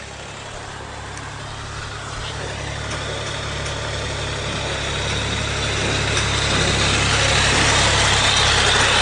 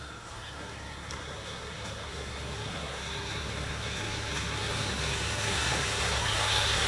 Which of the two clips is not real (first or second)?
second